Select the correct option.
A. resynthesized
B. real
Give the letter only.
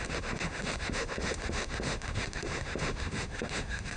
A